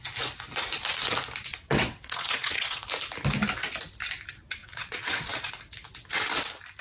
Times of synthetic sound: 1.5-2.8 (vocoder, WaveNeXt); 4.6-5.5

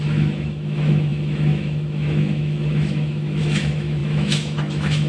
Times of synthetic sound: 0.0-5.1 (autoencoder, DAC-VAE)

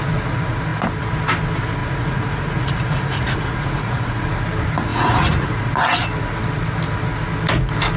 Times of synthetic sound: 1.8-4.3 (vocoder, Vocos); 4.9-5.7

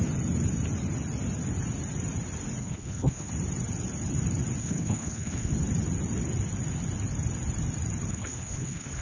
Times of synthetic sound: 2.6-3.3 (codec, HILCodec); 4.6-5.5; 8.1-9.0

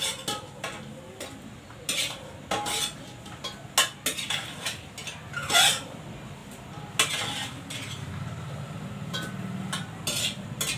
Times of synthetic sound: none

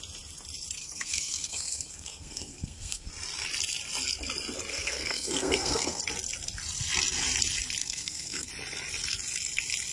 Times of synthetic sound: 0.8-3.1 (codec, SNAC); 4.7-6.0; 7.8-8.5

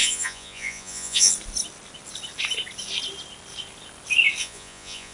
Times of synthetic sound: 0.0-1.3 (vocoder, Vocos); 4.4-5.1

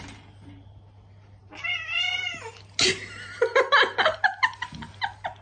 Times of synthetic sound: none